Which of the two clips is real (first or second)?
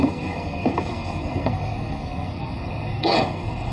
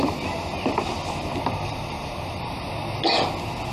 second